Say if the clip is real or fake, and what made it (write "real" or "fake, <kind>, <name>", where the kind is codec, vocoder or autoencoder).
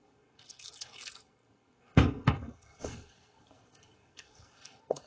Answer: fake, codec, SNAC